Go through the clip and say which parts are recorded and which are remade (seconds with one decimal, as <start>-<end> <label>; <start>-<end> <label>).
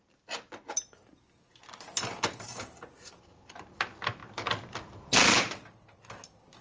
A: 0.0-6.6 recorded